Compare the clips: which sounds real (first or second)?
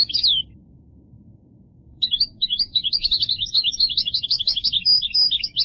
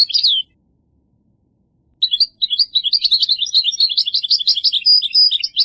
second